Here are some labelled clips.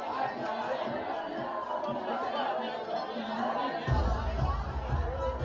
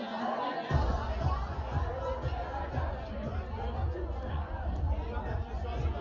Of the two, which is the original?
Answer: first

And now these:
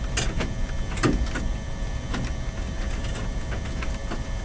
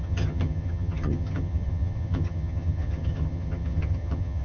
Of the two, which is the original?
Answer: first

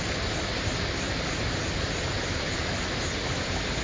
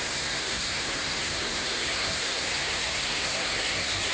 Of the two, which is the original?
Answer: first